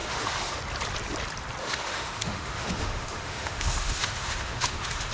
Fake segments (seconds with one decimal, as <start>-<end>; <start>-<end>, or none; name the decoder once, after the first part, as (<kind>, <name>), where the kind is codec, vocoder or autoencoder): 0.0-0.6 (autoencoder, DAC-VAE); 1.6-5.1